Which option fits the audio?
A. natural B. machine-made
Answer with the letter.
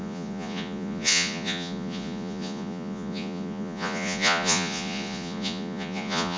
B